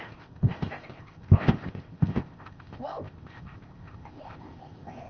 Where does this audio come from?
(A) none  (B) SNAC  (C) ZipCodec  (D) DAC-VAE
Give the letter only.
C